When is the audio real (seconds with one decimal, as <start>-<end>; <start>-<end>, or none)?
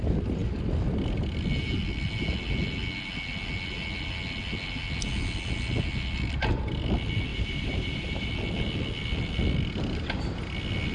0.0-7.3; 8.3-10.9